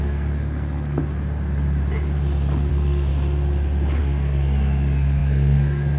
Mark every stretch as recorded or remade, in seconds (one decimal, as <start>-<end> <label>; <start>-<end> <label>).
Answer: 0.0-1.0 remade; 1.0-2.7 recorded; 2.7-3.1 remade; 3.1-4.0 recorded; 4.0-6.0 remade